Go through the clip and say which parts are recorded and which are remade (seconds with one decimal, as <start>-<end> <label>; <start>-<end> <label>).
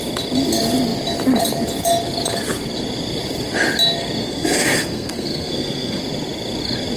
0.0-4.2 recorded; 4.2-6.0 remade; 6.0-7.0 recorded